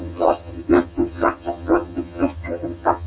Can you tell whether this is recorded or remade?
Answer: remade